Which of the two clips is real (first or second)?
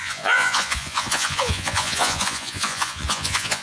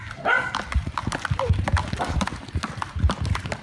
second